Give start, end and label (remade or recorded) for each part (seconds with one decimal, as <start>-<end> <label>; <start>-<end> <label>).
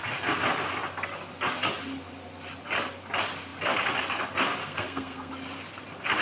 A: 0.0-4.6 recorded; 4.6-5.3 remade; 5.3-6.2 recorded